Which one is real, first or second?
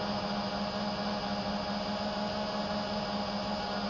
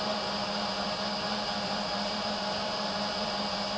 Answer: first